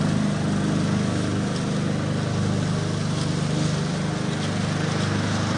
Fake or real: real